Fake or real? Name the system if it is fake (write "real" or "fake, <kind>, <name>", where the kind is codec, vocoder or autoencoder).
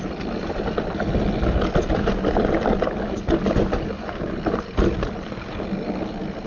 real